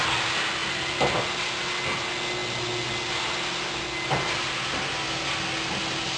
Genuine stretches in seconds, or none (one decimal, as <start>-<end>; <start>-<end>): 0.0-6.2